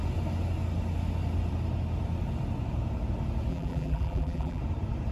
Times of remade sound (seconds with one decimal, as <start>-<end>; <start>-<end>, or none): 3.5-4.6

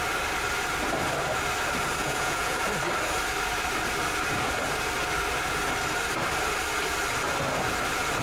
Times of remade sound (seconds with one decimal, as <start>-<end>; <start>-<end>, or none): 2.0-2.6

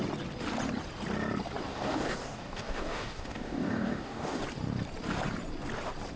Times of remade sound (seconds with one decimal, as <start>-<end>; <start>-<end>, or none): 1.7-4.4

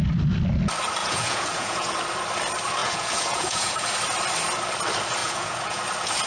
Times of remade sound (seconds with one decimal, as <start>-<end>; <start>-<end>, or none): 1.0-1.9; 2.8-3.8; 5.2-5.8

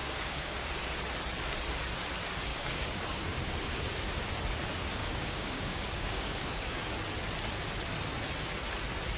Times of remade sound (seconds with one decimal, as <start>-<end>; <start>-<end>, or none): 0.0-0.7; 2.5-3.7; 5.0-6.9

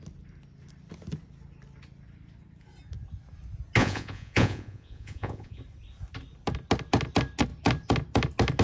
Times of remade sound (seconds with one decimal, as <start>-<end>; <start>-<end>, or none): 3.8-5.6

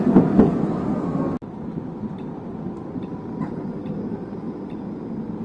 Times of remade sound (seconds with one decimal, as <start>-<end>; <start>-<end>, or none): none

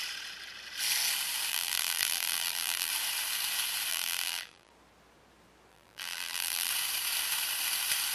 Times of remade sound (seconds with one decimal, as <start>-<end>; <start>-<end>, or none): 1.5-2.9; 3.9-4.7; 5.7-6.7